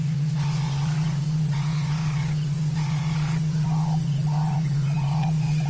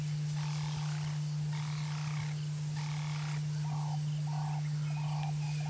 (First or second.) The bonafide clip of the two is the second